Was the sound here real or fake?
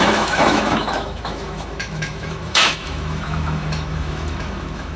fake